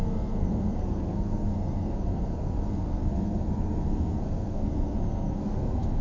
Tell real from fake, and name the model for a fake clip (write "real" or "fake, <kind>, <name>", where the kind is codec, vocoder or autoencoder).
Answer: fake, codec, SNAC